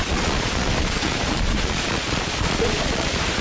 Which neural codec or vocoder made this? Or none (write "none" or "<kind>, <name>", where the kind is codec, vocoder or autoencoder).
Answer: vocoder, Vocos